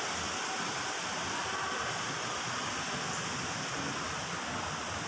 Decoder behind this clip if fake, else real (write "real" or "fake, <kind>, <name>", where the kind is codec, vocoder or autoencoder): real